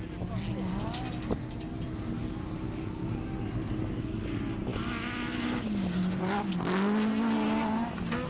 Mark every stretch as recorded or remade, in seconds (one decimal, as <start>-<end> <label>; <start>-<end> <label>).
0.0-8.3 recorded